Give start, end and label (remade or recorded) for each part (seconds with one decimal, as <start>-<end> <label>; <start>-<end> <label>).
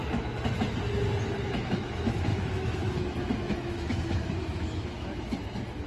0.0-1.5 recorded; 1.5-5.9 remade